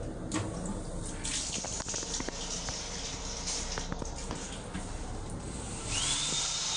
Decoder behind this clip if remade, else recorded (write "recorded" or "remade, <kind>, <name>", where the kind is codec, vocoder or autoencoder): recorded